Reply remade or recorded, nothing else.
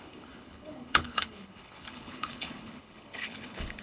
remade